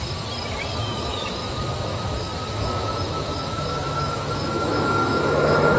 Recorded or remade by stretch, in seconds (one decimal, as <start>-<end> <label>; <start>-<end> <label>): 0.0-0.8 recorded; 0.8-1.3 remade; 1.3-1.9 recorded; 1.9-5.8 remade